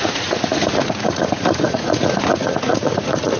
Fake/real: fake